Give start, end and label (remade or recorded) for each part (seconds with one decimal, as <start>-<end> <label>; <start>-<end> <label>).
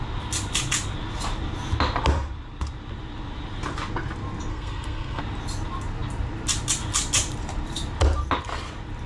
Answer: 0.0-4.5 recorded; 4.5-5.2 remade; 5.2-9.1 recorded